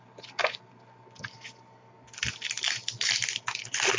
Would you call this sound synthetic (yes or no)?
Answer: no